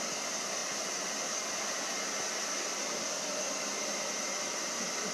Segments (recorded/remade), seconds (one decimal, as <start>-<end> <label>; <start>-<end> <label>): 0.0-5.1 remade

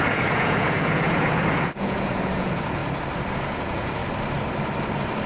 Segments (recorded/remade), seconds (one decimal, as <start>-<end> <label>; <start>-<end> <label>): 0.0-2.8 remade; 2.8-3.3 recorded; 3.3-4.0 remade; 4.0-5.3 recorded

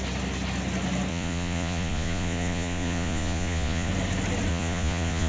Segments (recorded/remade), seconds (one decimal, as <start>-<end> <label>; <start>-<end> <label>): 0.0-1.1 recorded; 1.1-3.9 remade; 3.9-4.5 recorded; 4.5-5.3 remade

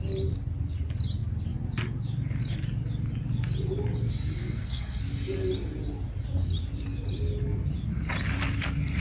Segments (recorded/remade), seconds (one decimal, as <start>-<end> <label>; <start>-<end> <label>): 0.0-4.4 recorded; 4.4-5.0 remade; 5.0-9.0 recorded